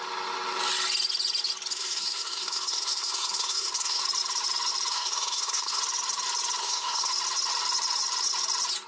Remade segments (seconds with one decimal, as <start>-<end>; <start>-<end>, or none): 1.7-4.0; 4.9-5.8; 6.6-7.1